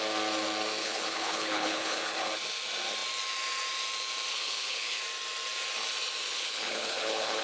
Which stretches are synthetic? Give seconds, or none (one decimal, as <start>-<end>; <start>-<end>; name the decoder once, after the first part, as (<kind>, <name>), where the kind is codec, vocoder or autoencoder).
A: 0.8-2.3 (codec, HILCodec); 4.3-5.0; 6.2-7.4